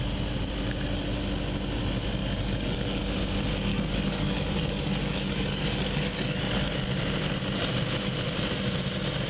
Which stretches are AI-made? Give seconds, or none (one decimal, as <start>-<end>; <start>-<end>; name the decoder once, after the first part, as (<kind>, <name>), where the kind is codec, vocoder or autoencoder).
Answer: 2.2-3.0 (codec, DAC); 3.7-6.9